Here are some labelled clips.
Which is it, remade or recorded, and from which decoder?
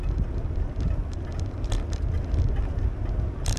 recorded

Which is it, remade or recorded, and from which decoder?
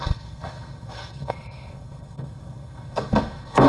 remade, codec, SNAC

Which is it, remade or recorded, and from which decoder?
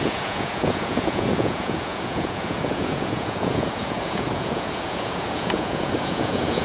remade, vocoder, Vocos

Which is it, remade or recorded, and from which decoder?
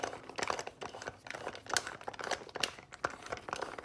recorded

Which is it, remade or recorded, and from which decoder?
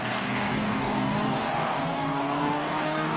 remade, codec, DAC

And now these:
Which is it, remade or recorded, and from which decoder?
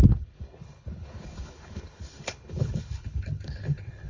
remade, codec, HILCodec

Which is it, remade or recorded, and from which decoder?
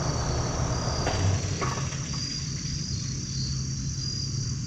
recorded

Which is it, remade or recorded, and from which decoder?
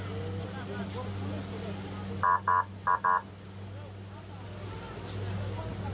recorded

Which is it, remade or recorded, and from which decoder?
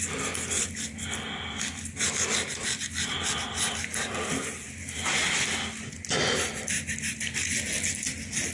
recorded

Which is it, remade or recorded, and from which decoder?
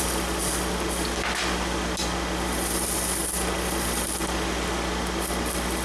recorded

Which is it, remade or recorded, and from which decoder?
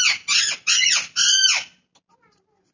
recorded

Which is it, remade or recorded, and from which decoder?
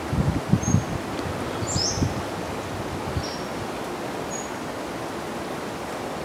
recorded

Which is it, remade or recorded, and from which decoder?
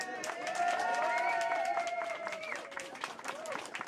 remade, vocoder, BigVGAN v2